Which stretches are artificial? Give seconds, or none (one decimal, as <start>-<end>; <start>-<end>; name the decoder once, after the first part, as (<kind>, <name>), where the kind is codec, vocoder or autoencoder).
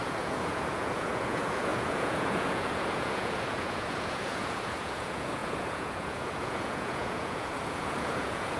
0.0-8.6 (vocoder, Vocos)